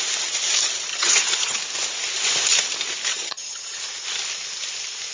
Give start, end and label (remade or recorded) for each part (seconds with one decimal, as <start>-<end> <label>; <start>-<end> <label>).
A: 0.0-0.9 recorded; 0.9-1.6 remade; 1.6-3.1 recorded; 3.1-3.8 remade; 3.8-5.1 recorded